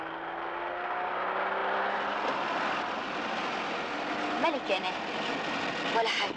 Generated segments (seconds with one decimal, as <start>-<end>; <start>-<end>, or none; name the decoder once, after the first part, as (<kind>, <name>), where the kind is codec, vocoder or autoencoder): none